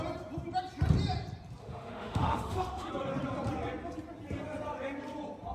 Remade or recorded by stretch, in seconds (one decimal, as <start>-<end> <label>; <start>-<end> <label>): 0.0-1.6 recorded; 1.6-2.9 remade; 2.9-5.5 recorded